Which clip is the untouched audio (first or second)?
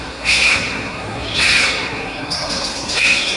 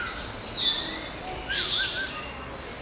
second